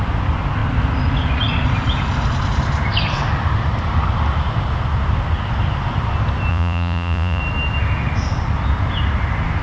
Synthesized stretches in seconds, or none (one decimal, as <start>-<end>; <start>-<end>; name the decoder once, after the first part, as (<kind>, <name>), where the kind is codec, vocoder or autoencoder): 6.5-7.4 (vocoder, Vocos)